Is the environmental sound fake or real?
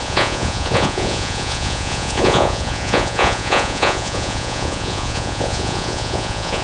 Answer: fake